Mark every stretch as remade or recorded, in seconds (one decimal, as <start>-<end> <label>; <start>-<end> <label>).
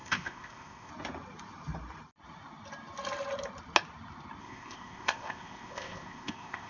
0.0-0.9 remade; 0.9-4.4 recorded; 4.4-6.7 remade